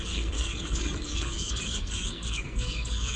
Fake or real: fake